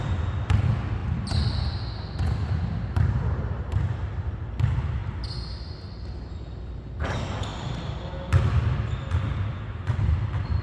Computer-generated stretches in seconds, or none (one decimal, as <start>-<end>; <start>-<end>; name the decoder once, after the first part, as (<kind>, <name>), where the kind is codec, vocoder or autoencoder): none